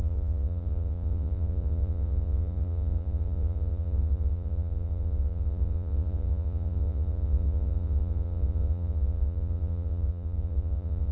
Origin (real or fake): fake